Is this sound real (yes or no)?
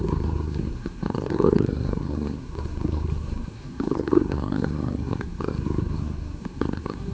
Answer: no